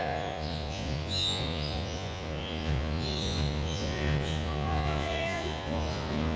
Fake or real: fake